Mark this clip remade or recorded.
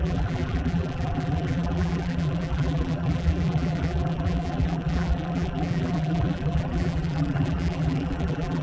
remade